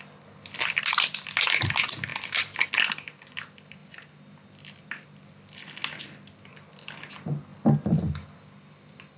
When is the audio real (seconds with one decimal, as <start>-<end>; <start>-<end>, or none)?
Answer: 0.0-9.2